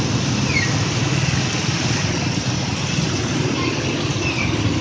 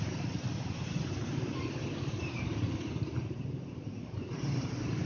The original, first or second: first